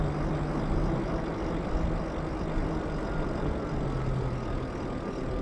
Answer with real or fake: real